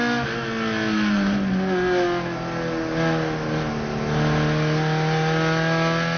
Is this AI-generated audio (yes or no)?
no